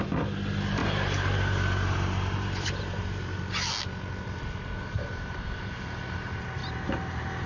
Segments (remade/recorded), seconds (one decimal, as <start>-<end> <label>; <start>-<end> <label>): 0.0-0.8 recorded; 0.8-3.4 remade; 3.4-6.6 recorded; 6.6-7.5 remade